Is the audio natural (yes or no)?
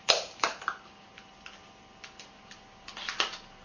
yes